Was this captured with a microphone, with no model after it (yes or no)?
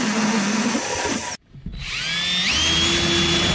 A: yes